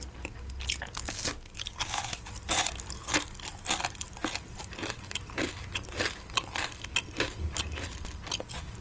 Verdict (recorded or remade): recorded